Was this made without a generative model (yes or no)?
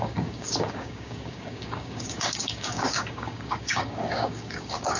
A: no